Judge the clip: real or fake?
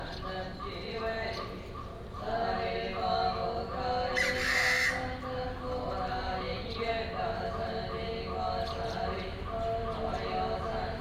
real